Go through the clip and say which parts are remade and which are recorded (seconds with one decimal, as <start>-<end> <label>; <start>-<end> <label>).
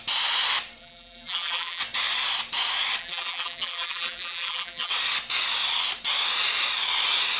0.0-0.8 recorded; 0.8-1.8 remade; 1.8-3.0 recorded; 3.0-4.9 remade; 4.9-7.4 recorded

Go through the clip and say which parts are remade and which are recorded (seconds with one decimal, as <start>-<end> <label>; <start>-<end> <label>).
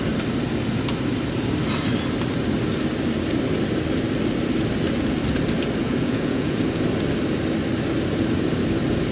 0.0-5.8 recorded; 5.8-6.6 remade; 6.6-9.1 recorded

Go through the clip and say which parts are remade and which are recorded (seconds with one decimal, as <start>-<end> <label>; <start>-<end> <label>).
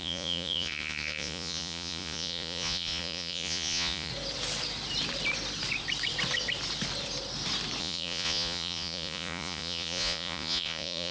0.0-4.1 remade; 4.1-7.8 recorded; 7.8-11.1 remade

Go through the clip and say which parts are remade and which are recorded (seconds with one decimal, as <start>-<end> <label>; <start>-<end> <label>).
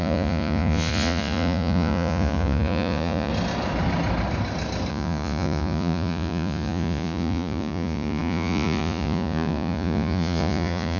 0.0-3.3 remade; 3.3-4.9 recorded; 4.9-11.0 remade